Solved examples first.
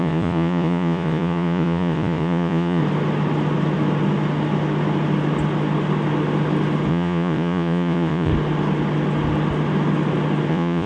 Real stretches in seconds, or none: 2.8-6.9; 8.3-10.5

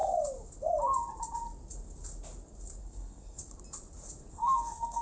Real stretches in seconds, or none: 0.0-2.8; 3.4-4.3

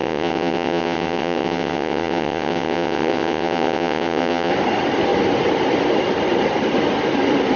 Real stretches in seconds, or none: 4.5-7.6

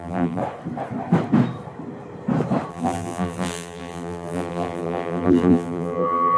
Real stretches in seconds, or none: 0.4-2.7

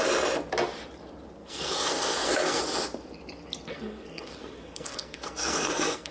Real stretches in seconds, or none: 0.0-1.4; 2.6-3.7